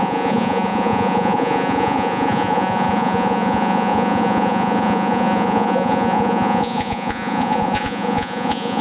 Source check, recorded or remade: remade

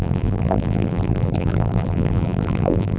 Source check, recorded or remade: remade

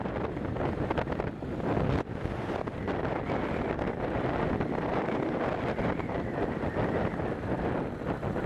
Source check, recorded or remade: recorded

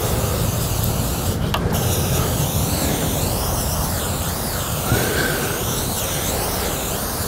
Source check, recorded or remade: recorded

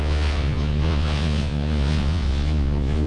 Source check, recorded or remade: remade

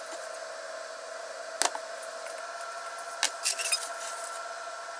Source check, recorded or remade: recorded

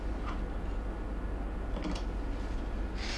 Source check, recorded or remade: recorded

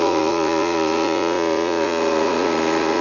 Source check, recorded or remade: remade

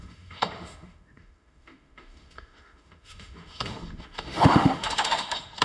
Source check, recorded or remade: remade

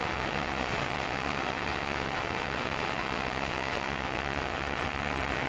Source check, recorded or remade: remade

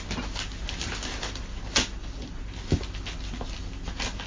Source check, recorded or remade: recorded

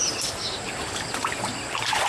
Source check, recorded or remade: recorded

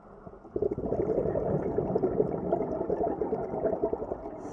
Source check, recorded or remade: recorded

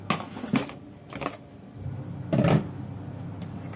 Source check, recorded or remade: recorded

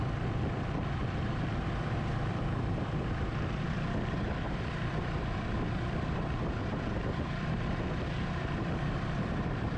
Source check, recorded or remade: remade